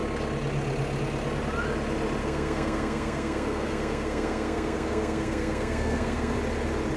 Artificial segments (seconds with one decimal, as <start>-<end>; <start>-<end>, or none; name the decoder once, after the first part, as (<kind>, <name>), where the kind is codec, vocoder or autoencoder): 2.2-6.4 (codec, SNAC)